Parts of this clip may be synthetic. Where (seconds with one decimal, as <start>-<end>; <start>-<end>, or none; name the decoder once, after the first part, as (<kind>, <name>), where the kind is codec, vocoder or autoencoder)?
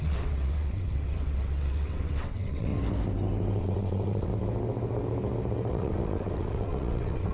0.0-2.7 (vocoder, WaveNeXt); 3.6-4.3; 5.7-7.3